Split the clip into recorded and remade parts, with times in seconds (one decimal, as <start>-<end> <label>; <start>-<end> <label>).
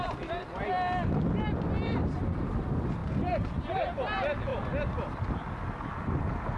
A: 0.0-6.6 recorded